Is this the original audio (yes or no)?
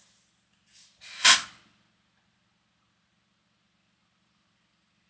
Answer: yes